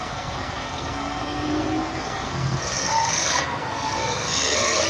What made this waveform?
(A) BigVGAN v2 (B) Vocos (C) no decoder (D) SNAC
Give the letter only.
D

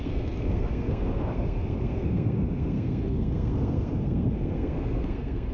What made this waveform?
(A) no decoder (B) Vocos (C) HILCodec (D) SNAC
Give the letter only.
D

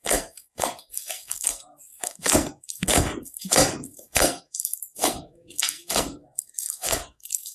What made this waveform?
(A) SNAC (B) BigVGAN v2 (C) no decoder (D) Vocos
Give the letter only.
A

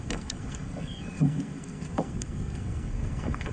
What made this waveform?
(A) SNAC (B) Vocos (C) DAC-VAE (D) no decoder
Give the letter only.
A